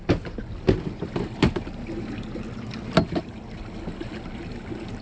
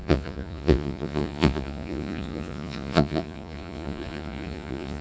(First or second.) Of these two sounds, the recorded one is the first